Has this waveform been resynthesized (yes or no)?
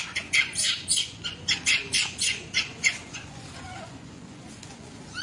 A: yes